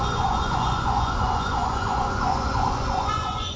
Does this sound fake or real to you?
fake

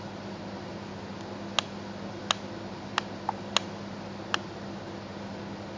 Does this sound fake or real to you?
real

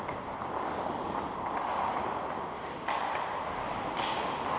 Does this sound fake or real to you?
real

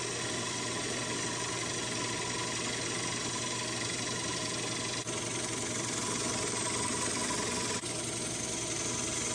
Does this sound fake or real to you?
real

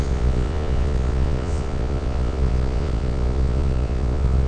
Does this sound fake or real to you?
fake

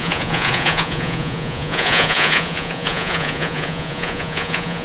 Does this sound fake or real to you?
fake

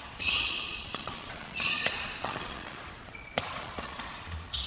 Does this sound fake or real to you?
fake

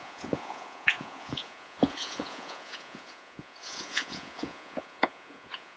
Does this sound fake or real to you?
fake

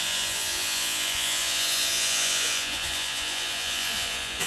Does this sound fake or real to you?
fake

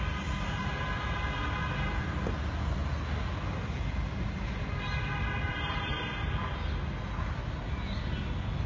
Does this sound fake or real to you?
real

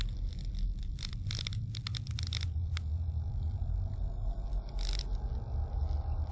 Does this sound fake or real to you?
real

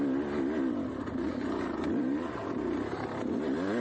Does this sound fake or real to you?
real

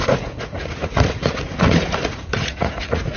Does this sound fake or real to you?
fake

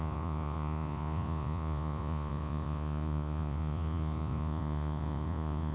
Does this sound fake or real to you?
fake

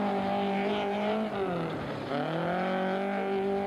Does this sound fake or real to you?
real